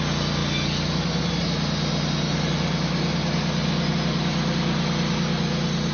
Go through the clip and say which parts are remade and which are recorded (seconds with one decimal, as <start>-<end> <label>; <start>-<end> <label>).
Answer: 0.0-5.9 recorded